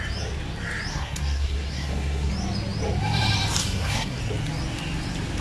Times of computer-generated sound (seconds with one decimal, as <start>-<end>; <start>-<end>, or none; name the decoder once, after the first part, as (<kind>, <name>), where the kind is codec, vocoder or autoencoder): 0.9-2.3 (codec, SNAC); 3.6-4.2